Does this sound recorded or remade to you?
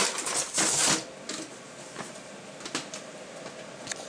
recorded